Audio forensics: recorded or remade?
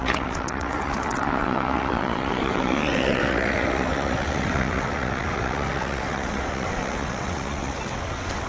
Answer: remade